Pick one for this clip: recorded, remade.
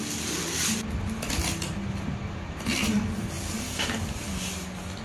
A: recorded